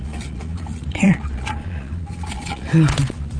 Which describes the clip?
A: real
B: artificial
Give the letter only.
B